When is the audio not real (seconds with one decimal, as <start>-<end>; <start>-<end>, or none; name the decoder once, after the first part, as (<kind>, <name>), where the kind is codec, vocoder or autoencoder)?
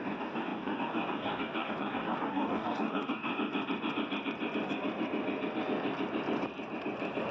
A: 0.0-3.3 (codec, DAC)